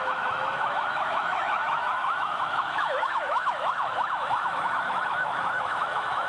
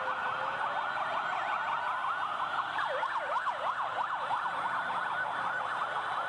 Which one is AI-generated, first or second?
first